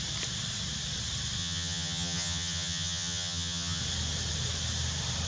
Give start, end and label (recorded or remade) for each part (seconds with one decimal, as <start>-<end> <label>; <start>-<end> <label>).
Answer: 0.0-1.4 recorded; 1.4-3.8 remade; 3.8-5.3 recorded